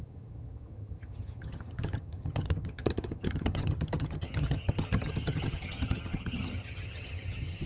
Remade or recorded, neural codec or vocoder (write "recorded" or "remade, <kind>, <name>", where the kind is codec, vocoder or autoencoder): remade, vocoder, HiFi-GAN